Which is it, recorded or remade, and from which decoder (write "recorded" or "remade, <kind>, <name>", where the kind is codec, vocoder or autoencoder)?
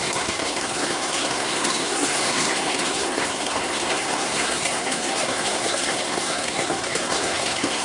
remade, codec, SNAC